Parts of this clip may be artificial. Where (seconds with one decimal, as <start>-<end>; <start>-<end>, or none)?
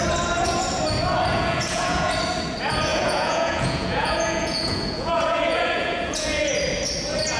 1.3-2.1; 2.9-6.5